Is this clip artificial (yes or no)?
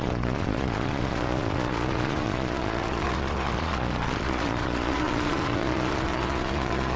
yes